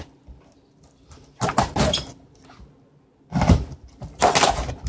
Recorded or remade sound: recorded